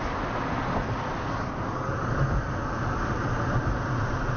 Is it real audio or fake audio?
real